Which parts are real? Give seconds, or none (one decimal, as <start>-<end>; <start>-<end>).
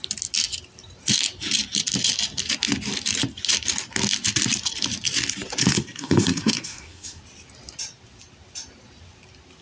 0.0-5.6; 7.2-9.6